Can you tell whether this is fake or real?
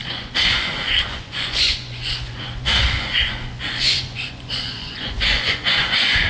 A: fake